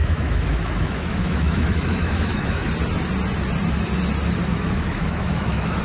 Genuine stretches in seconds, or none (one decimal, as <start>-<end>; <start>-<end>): 2.7-4.5